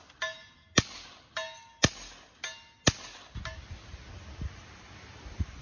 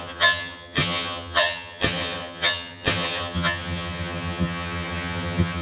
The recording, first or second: first